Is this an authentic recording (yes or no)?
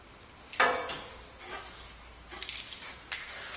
yes